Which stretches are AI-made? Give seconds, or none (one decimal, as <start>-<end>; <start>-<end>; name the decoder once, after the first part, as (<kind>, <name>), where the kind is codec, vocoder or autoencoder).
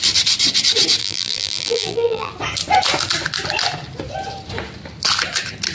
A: 1.0-2.3 (vocoder, BigVGAN v2)